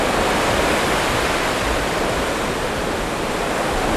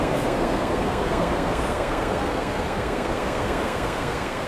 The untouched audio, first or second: first